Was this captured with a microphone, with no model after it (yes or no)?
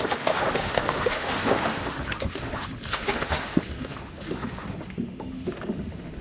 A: no